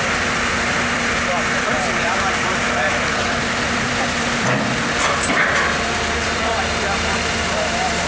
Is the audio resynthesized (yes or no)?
yes